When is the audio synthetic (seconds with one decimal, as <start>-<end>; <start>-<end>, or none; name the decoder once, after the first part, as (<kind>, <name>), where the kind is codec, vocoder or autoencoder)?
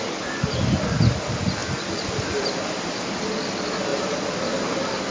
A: none